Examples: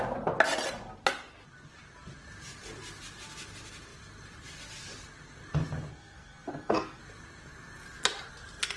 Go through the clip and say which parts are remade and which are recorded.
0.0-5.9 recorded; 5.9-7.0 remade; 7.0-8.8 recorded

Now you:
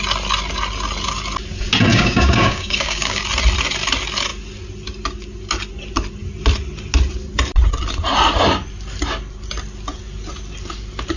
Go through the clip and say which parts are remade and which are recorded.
0.0-1.9 recorded; 1.9-3.2 remade; 3.2-11.2 recorded

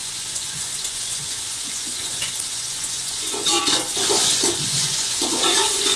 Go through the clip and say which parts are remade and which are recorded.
0.0-6.0 remade

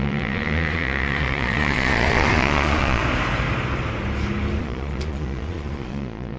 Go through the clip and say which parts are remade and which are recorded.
0.0-3.0 remade; 3.0-4.6 recorded; 4.6-6.4 remade

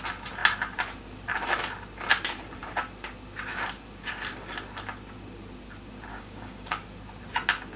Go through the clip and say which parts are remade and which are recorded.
0.0-6.1 recorded; 6.1-6.7 remade; 6.7-7.8 recorded

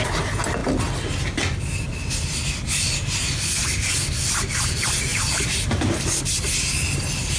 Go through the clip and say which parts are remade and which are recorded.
0.0-7.4 recorded

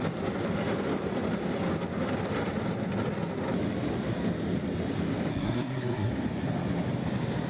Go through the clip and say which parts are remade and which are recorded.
0.0-5.3 recorded; 5.3-6.1 remade; 6.1-7.5 recorded

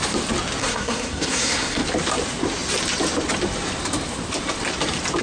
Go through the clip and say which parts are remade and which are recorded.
0.0-0.6 recorded; 0.6-1.8 remade; 1.8-5.2 recorded